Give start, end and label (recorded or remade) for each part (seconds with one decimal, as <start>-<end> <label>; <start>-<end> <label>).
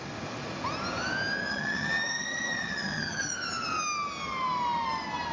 0.0-1.5 recorded; 1.5-3.3 remade; 3.3-5.3 recorded